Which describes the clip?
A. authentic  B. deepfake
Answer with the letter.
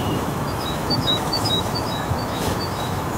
B